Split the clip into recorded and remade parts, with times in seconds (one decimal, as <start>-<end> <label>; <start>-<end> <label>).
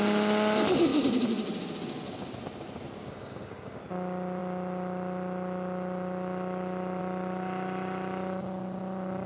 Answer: 0.0-3.0 recorded; 3.0-3.8 remade; 3.8-9.3 recorded